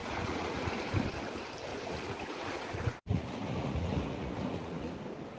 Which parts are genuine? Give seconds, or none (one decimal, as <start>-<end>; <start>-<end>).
0.7-1.7; 4.9-5.4

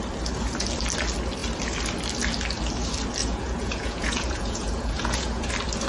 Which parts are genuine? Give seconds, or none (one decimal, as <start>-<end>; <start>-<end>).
0.0-3.2; 5.5-5.9